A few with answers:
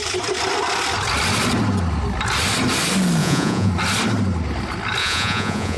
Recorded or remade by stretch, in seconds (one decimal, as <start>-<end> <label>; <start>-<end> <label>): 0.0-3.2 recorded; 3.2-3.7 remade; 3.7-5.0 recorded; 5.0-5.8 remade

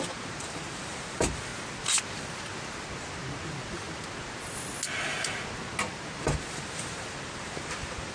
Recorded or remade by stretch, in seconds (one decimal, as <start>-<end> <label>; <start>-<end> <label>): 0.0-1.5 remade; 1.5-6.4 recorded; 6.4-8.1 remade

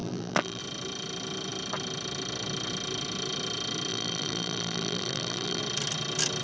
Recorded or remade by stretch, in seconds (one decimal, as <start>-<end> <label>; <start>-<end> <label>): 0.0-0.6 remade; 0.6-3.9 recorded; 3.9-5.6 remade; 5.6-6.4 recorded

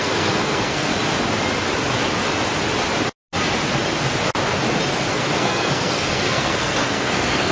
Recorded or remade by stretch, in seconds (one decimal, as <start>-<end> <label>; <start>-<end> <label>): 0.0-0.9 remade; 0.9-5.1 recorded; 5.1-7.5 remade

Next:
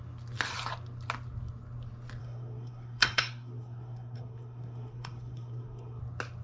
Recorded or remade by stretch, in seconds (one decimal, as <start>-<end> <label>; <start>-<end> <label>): 0.0-2.2 recorded; 2.2-6.0 remade; 6.0-6.4 recorded

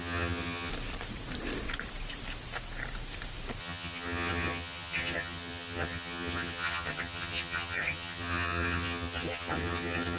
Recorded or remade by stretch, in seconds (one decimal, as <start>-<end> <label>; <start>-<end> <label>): 0.0-0.7 remade; 0.7-3.6 recorded; 3.6-10.2 remade